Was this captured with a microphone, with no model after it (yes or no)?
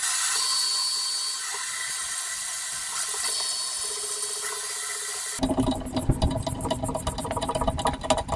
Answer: yes